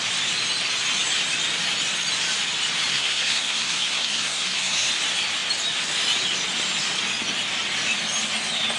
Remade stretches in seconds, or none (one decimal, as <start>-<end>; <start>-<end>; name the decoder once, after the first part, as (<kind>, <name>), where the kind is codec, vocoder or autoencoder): 2.9-4.9 (codec, SNAC)